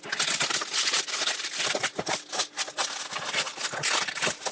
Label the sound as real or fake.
real